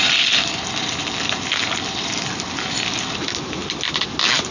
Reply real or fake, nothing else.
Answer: real